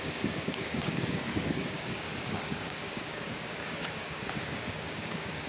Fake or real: fake